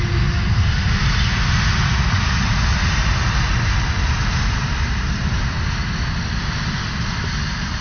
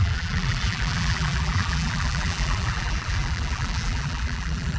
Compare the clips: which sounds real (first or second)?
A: first